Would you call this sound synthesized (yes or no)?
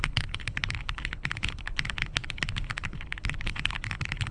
yes